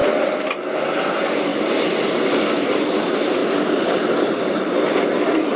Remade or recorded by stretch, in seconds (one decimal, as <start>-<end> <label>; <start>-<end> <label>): 0.0-0.8 remade; 0.8-1.5 recorded; 1.5-2.4 remade; 2.4-3.4 recorded; 3.4-4.9 remade; 4.9-5.6 recorded